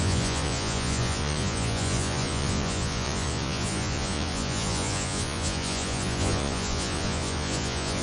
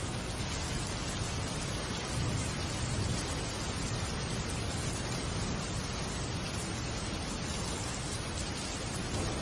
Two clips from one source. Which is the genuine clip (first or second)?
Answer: second